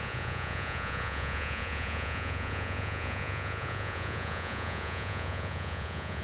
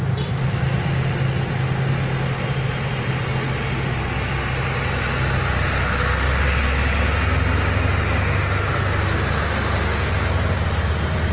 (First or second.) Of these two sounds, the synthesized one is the first